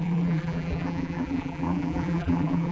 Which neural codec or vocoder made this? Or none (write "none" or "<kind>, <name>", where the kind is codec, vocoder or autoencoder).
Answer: vocoder, BigVGAN v2